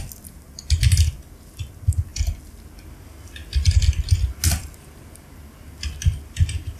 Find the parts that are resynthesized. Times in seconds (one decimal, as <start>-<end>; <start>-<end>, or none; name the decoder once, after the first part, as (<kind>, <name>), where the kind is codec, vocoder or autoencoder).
none